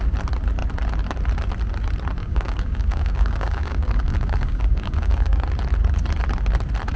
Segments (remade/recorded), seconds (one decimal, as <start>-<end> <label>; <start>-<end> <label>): 0.0-2.2 recorded; 2.2-5.4 remade; 5.4-7.0 recorded